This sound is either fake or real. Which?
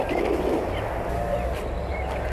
real